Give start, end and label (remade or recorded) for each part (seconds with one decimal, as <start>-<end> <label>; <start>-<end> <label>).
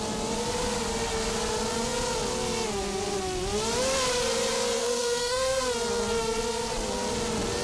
0.0-4.8 recorded; 4.8-5.6 remade; 5.6-7.6 recorded